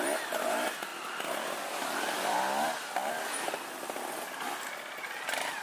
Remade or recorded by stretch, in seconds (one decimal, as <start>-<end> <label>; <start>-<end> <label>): 0.0-5.6 recorded